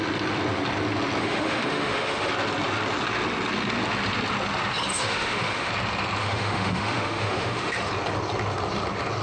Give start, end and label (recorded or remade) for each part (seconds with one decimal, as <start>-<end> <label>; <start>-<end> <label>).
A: 0.0-1.2 recorded; 1.2-2.3 remade; 2.3-4.9 recorded; 4.9-5.7 remade; 5.7-6.2 recorded; 6.2-7.9 remade; 7.9-9.2 recorded